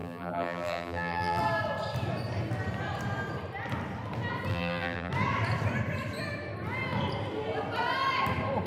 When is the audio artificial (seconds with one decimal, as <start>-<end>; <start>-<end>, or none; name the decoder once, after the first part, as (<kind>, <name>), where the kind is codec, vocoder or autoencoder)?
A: 0.0-1.4 (vocoder, BigVGAN v2); 4.5-5.1